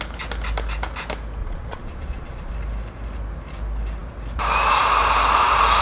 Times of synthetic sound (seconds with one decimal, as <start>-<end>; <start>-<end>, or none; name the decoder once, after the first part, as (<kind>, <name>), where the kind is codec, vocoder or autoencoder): 1.4-2.5 (vocoder, Vocos)